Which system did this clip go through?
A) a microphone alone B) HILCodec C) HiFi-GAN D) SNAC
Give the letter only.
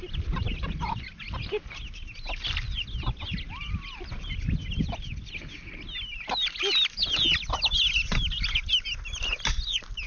A